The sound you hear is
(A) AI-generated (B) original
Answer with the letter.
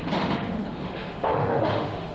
A